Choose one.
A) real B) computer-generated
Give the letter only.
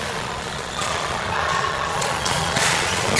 B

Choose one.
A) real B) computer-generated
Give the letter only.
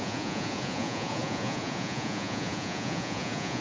B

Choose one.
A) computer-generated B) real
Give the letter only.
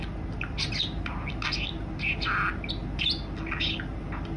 B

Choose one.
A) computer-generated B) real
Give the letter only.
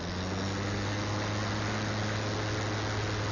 B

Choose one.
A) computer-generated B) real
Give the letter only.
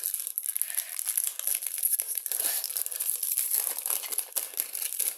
B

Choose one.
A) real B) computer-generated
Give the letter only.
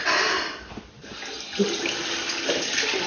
A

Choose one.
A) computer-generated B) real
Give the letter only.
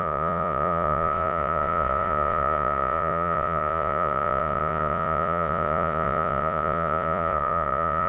A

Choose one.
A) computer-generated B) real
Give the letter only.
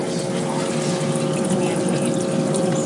B